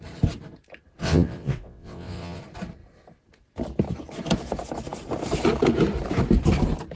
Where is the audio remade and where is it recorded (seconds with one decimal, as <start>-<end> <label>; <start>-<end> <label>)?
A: 0.0-1.0 recorded; 1.0-2.4 remade; 2.4-7.0 recorded